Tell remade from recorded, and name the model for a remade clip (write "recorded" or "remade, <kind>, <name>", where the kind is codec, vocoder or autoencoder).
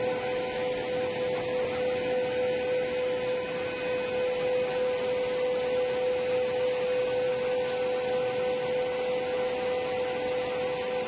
recorded